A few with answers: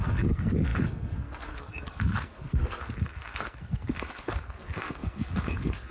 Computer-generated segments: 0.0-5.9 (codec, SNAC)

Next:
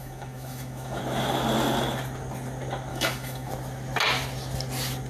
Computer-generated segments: 0.0-1.0 (autoencoder, DAC-VAE); 2.9-3.5

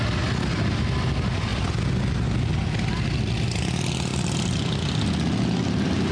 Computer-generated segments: none

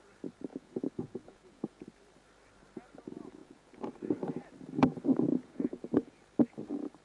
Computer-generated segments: 0.5-1.8 (vocoder, Vocos); 3.4-3.9; 5.3-6.1

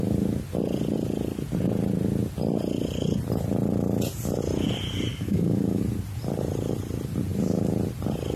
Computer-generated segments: 5.1-5.8 (codec, DAC)

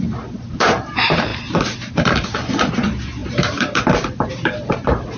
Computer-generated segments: 0.0-5.2 (vocoder, BigVGAN v2)

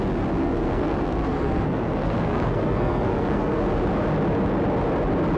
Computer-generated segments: 0.4-3.6 (codec, SNAC)